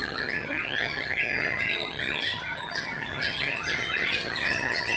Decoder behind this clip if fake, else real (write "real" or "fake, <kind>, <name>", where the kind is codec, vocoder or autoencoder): fake, vocoder, HiFi-GAN